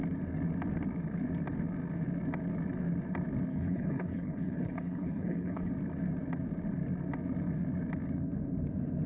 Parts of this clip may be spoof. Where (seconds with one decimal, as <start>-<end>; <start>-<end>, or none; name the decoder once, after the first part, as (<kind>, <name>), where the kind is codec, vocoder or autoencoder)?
3.5-5.7 (codec, HILCodec)